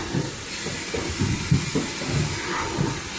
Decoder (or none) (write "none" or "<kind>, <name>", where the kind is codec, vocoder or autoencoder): none